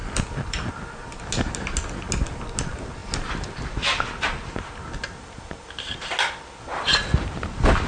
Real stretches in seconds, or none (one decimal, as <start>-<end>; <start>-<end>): 0.0-7.9